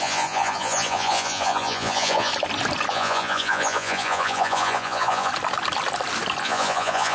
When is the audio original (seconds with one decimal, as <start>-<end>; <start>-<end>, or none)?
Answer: 2.3-2.9; 5.3-6.4